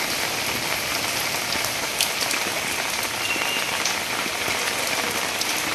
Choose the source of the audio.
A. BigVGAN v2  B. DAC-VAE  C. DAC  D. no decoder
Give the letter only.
D